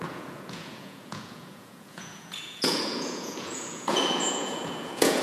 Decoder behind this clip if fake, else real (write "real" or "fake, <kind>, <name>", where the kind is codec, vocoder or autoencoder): fake, vocoder, Vocos